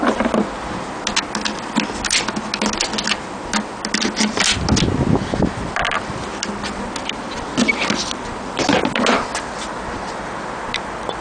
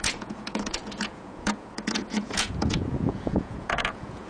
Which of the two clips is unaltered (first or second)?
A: first